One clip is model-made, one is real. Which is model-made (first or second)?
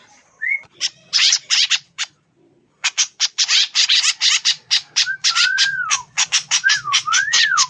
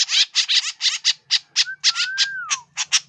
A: first